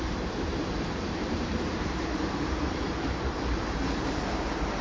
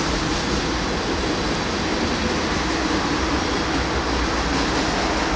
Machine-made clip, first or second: first